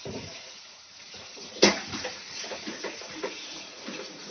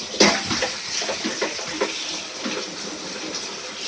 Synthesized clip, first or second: first